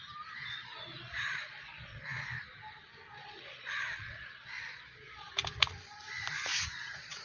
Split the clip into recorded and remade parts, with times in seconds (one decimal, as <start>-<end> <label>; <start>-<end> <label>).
0.0-0.4 recorded; 0.4-2.3 remade; 2.3-3.2 recorded; 3.2-5.3 remade; 5.3-6.5 recorded; 6.5-7.2 remade